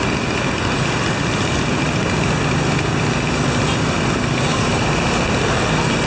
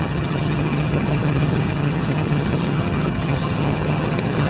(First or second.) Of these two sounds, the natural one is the first